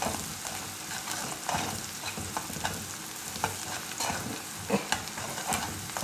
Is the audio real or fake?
real